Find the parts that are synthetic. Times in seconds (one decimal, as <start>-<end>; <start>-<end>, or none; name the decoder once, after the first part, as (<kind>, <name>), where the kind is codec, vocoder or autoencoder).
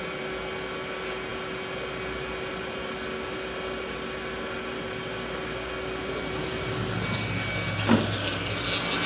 none